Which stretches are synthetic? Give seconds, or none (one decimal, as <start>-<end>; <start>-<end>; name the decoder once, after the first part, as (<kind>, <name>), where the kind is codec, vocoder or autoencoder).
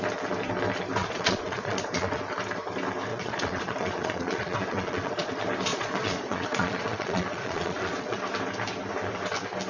1.0-2.2 (vocoder, Vocos); 3.1-5.3; 5.7-8.2